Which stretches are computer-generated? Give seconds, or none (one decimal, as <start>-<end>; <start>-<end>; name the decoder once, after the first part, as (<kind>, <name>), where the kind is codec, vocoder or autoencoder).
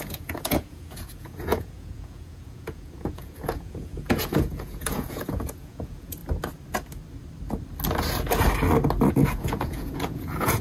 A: 0.0-6.2 (vocoder, Vocos); 9.1-10.6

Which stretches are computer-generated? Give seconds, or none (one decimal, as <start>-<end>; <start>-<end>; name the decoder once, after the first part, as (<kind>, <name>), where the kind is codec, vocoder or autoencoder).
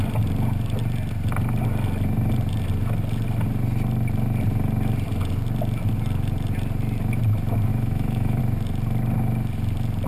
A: 7.7-8.4 (autoencoder, DAC-VAE)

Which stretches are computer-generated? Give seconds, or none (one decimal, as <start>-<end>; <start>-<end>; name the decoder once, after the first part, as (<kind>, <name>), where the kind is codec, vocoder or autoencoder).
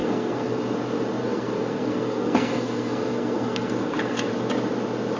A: 0.0-0.6 (codec, SNAC); 1.2-4.3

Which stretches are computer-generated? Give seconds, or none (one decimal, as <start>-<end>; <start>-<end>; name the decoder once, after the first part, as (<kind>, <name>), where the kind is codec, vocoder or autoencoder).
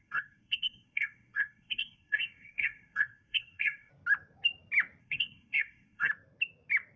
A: 0.0-3.9 (codec, SNAC); 5.0-6.1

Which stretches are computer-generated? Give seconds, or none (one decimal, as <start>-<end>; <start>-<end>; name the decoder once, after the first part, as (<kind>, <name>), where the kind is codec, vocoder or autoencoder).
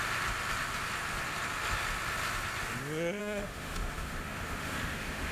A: 3.2-5.3 (autoencoder, DAC-VAE)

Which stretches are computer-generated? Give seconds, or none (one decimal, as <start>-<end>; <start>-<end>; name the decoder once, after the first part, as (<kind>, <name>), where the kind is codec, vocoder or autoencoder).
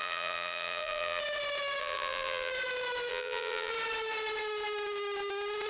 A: 0.0-1.2 (vocoder, BigVGAN v2); 1.8-2.5; 3.1-3.7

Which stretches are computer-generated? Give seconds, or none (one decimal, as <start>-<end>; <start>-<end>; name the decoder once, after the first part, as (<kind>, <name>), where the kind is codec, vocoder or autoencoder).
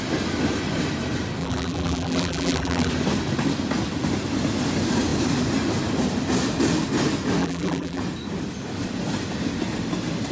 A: 1.4-2.9 (vocoder, BigVGAN v2); 7.4-8.0